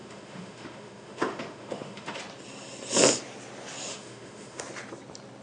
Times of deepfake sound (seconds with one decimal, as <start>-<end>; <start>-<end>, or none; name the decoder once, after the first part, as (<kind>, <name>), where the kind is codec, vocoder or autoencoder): 0.0-2.2 (autoencoder, DAC-VAE); 3.9-4.6